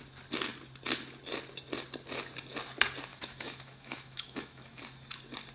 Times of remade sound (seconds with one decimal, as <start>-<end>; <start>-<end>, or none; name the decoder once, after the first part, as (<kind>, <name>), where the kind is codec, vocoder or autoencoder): 3.1-4.8 (autoencoder, DAC-VAE)